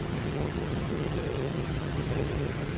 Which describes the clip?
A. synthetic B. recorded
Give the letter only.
A